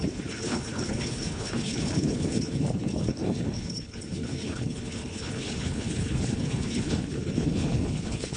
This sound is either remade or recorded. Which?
remade